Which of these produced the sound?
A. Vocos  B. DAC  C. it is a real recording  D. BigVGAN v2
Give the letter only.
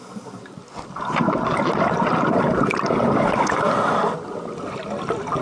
C